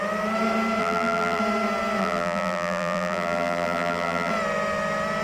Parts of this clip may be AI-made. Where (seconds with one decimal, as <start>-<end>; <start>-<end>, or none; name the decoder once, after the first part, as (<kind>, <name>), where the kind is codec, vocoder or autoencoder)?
0.8-1.4 (vocoder, BigVGAN v2); 2.0-4.3